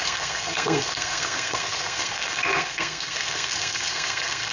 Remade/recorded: remade